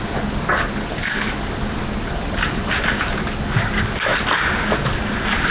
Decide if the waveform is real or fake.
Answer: real